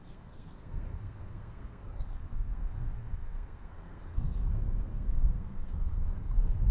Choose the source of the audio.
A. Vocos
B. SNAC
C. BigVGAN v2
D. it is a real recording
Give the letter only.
B